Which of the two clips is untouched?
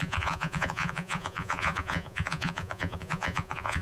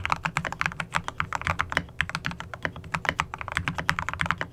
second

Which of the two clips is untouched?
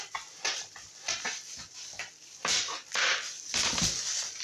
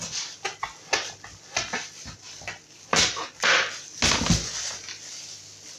second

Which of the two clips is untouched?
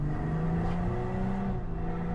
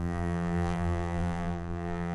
first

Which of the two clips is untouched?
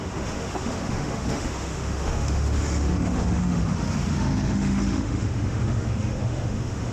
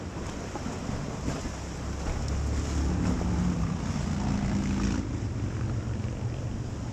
second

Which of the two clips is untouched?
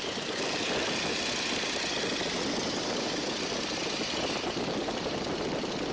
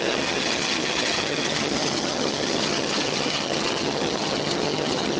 first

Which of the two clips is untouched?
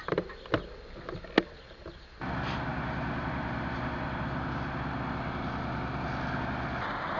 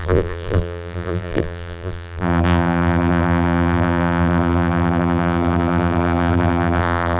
first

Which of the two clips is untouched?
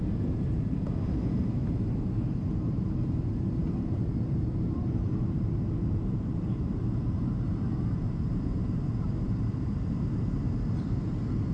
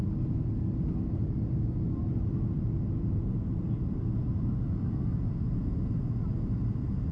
second